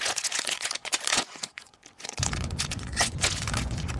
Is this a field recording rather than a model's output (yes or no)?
no